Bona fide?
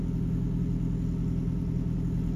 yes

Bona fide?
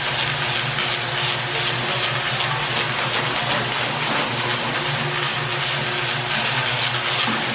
yes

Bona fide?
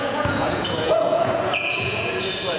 no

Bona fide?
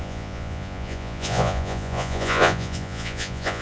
no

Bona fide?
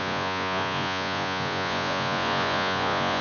no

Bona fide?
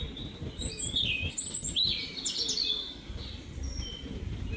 yes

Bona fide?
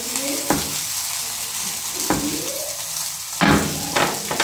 yes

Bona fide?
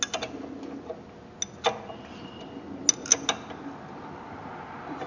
yes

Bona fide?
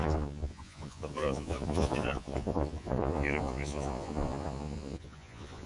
no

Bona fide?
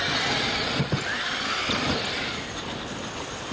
yes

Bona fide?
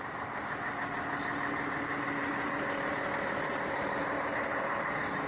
yes